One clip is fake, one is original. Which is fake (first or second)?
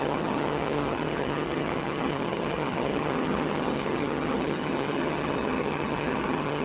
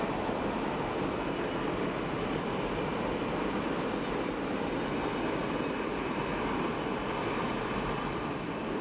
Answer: first